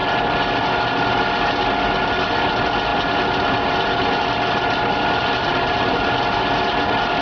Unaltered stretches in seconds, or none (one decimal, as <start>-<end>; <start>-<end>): 0.0-5.4; 6.1-7.2